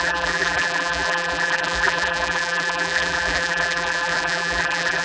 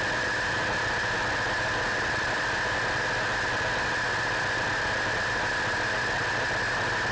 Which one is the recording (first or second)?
second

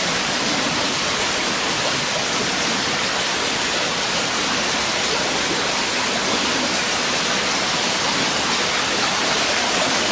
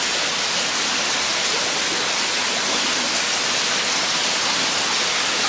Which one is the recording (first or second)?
second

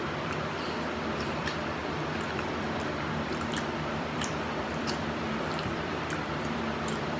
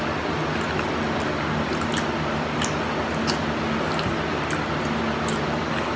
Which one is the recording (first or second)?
second